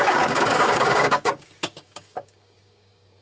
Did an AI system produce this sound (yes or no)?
yes